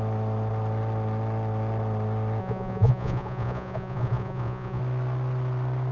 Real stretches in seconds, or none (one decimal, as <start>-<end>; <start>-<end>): 0.0-2.4; 4.8-5.9